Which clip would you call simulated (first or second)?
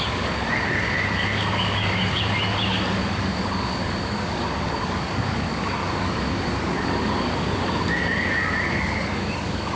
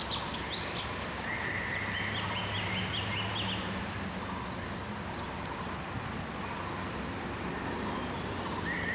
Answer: first